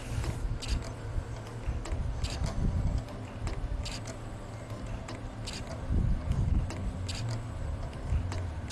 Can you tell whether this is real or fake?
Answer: real